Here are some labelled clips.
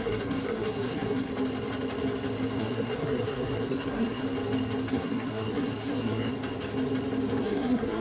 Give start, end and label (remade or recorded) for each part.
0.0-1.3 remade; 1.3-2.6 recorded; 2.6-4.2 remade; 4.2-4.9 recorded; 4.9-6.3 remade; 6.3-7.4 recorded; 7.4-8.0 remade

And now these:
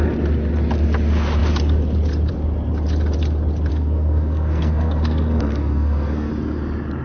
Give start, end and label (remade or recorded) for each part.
0.0-3.7 recorded; 3.7-6.3 remade; 6.3-7.0 recorded

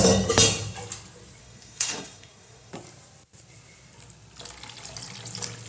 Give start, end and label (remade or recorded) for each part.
0.0-1.4 recorded; 1.4-2.7 remade; 2.7-5.7 recorded

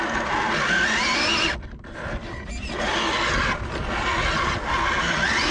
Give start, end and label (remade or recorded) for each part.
0.0-5.5 recorded

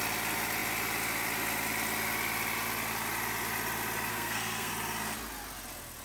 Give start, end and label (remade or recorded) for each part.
0.0-4.1 recorded; 4.1-4.7 remade; 4.7-6.0 recorded